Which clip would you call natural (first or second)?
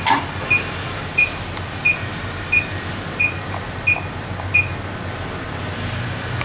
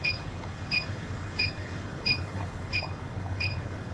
first